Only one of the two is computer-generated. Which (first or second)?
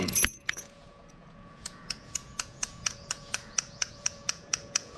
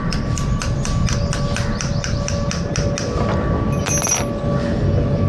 first